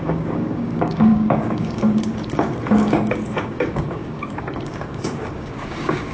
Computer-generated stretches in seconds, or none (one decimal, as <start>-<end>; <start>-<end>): 0.0-6.1

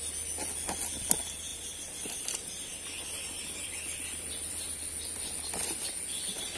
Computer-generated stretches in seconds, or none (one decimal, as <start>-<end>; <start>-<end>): 1.5-5.5

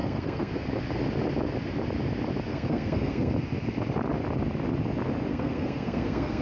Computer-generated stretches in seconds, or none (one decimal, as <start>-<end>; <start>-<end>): 0.0-0.5; 2.5-3.3; 5.3-6.4

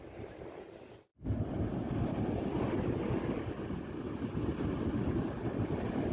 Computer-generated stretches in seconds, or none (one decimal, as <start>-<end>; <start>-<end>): none